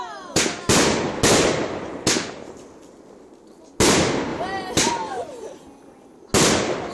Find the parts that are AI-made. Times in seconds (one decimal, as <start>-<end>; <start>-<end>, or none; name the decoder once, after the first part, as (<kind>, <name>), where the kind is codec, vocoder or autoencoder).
none